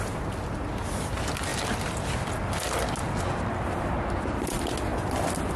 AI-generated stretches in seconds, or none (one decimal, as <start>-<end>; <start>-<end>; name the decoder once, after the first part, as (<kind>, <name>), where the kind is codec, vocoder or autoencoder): none